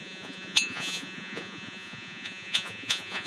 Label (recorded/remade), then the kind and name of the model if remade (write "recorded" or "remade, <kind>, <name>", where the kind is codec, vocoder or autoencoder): remade, vocoder, Vocos